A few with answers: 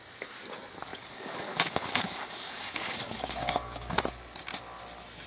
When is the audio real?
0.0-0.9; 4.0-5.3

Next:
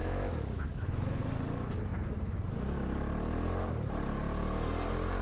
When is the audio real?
1.2-5.2

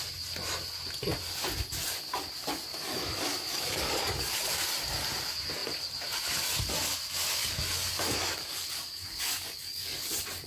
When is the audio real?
0.0-2.7; 4.7-7.4; 10.1-10.5

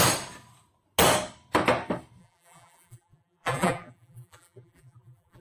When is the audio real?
0.0-2.2

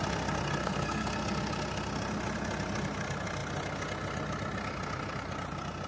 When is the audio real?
0.0-0.6; 1.1-5.9

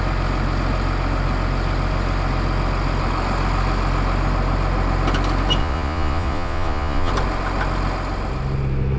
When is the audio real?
0.0-5.6; 7.1-9.0